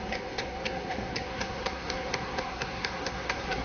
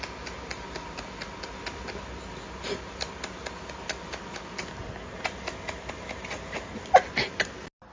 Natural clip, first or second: second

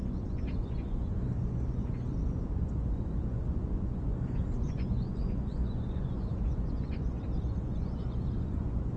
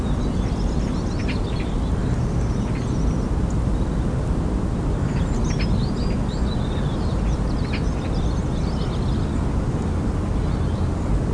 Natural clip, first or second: second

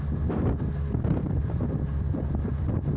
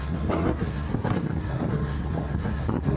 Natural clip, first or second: first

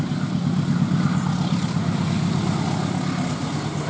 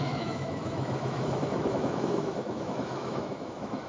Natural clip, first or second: first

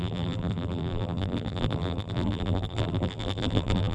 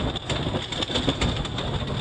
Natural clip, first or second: second